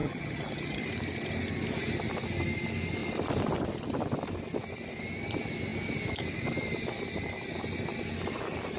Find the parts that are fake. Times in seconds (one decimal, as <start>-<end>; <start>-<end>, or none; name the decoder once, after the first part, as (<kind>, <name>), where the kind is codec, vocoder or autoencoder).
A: 0.0-0.8 (vocoder, HiFi-GAN)